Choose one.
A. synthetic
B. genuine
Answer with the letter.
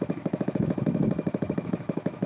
A